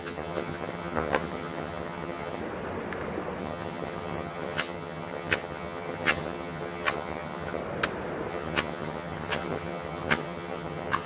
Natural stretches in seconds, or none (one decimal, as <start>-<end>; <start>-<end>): 2.4-3.4; 7.6-8.3